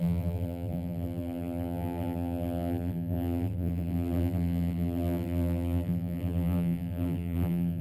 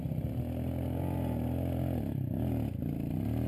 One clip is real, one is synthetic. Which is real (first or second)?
second